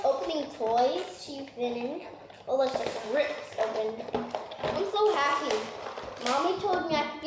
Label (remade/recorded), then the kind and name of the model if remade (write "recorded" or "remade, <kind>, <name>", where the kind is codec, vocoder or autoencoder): recorded